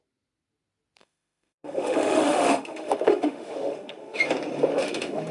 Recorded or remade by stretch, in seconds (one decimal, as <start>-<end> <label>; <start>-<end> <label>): 0.0-1.0 recorded; 1.0-4.2 remade; 4.2-4.7 recorded; 4.7-5.3 remade